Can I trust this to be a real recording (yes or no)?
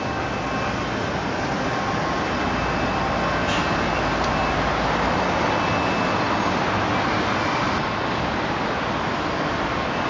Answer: yes